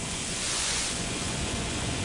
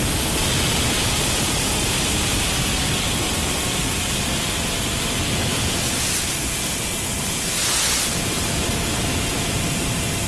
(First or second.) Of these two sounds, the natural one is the second